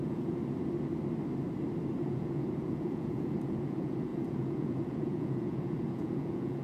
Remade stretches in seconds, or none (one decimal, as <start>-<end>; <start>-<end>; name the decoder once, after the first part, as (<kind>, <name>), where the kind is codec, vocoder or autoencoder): 0.0-0.4 (vocoder, Vocos); 2.0-6.6